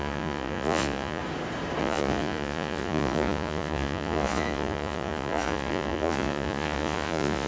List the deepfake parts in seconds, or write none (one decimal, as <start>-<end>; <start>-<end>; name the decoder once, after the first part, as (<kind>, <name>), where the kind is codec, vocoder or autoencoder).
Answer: 0.0-1.2 (vocoder, Vocos); 1.8-7.5